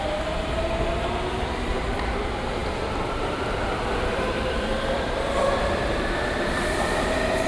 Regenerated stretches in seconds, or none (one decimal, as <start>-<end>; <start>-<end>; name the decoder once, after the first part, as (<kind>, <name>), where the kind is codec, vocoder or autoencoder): 2.6-7.1 (vocoder, BigVGAN v2)